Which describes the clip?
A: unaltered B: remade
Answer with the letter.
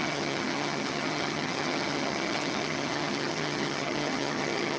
B